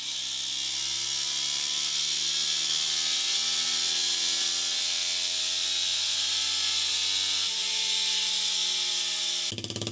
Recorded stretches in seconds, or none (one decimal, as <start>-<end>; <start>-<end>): 0.0-5.9; 6.9-9.9